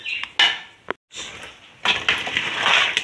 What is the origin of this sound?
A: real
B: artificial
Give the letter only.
A